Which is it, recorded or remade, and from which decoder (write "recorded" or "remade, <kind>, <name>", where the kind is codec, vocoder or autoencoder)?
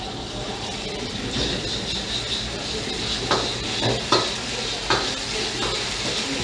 recorded